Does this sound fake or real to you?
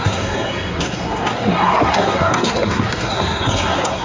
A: fake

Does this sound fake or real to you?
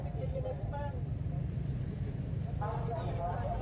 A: fake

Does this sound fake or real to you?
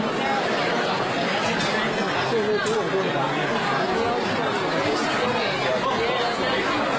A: real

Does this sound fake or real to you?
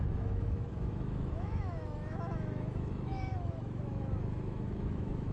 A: fake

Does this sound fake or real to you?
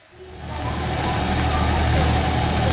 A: real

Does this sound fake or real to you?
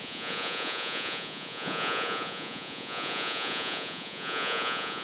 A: fake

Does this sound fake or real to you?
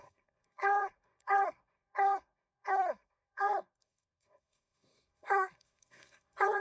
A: fake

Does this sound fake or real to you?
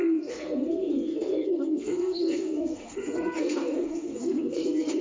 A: fake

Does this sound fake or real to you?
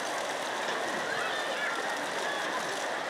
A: real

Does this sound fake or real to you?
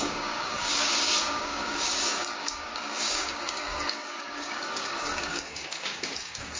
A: fake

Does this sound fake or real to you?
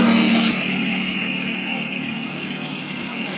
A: fake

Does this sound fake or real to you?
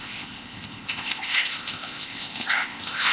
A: fake